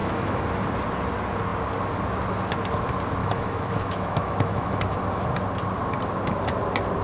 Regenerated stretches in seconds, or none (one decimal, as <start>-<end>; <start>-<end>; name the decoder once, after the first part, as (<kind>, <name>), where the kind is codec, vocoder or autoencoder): 0.0-0.6 (autoencoder, DAC-VAE); 3.2-5.0